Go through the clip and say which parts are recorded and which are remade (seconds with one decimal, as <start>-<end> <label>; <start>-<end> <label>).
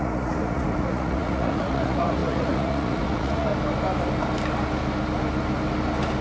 0.0-3.5 remade; 3.5-6.2 recorded